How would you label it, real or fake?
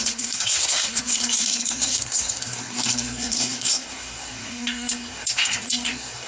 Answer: fake